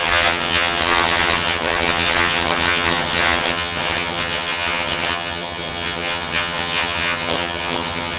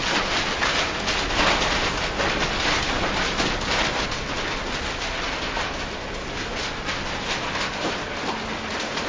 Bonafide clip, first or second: second